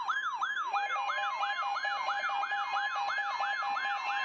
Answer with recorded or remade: recorded